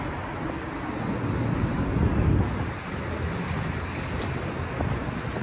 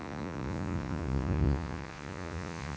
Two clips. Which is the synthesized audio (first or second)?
second